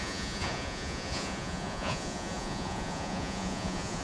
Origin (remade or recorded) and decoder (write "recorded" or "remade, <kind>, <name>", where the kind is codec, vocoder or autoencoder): remade, vocoder, Vocos